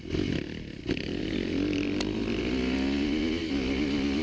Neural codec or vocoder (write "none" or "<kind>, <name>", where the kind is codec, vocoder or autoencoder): none